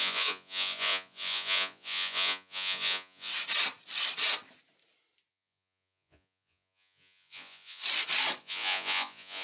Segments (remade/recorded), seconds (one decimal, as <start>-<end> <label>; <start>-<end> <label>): 0.0-3.3 remade; 3.3-5.3 recorded; 5.3-7.8 remade; 7.8-8.4 recorded; 8.4-9.4 remade